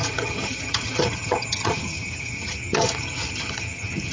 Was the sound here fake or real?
fake